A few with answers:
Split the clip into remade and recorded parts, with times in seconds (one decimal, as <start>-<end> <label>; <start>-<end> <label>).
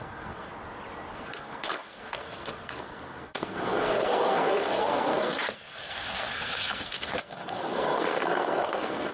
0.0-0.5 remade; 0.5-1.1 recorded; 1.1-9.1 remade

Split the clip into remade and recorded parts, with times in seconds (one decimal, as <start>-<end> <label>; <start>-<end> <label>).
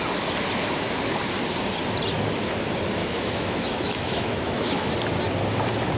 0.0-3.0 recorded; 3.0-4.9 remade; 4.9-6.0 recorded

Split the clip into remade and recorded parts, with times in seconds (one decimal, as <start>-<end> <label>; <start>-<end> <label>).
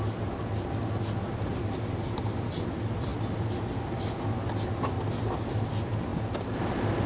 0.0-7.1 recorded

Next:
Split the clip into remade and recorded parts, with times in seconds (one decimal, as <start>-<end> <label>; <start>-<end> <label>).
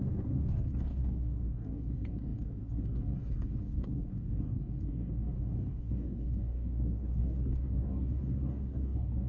0.0-9.3 remade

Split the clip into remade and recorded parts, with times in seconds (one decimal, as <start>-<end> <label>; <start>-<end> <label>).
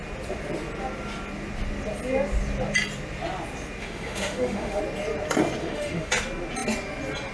0.0-3.8 recorded; 3.8-4.8 remade; 4.8-5.6 recorded; 5.6-6.1 remade; 6.1-7.3 recorded